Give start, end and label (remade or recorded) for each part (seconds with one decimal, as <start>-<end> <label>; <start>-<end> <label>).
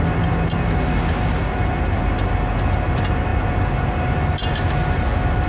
0.0-5.5 recorded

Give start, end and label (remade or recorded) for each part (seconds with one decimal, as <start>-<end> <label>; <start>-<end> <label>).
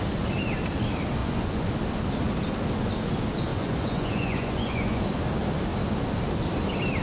0.0-1.2 recorded; 1.2-1.7 remade; 1.7-3.5 recorded; 3.5-5.0 remade; 5.0-7.0 recorded